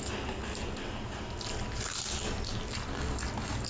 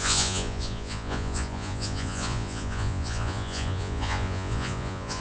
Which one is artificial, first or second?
second